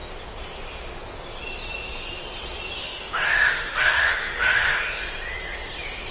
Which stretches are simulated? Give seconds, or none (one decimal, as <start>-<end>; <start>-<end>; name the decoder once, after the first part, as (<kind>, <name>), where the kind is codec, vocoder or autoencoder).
2.8-5.0 (autoencoder, DAC-VAE)